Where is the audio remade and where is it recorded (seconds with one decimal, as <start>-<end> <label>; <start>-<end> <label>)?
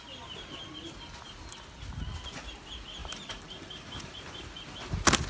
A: 0.0-3.0 recorded; 3.0-4.2 remade; 4.2-5.3 recorded